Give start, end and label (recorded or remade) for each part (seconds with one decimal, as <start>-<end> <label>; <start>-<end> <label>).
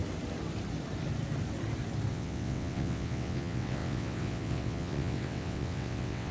0.0-2.1 recorded; 2.1-6.3 remade